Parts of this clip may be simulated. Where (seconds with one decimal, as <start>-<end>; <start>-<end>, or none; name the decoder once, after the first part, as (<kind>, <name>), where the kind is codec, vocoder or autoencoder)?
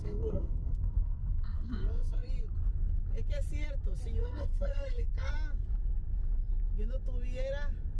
0.0-2.3 (codec, SNAC); 4.2-5.3